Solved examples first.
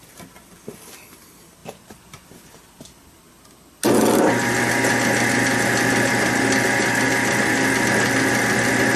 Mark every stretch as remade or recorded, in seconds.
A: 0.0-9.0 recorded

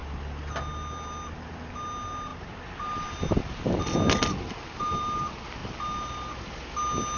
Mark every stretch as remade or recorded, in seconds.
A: 0.0-7.2 recorded

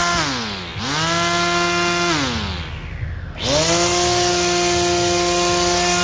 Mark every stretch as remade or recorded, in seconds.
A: 0.0-6.0 recorded

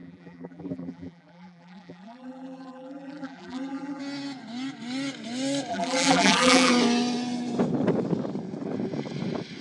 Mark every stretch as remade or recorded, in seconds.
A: 0.0-4.0 remade; 4.0-5.7 recorded; 5.7-6.7 remade; 6.7-9.6 recorded